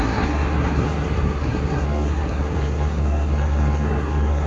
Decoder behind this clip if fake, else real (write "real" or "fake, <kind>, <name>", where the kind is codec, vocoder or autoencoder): fake, codec, SNAC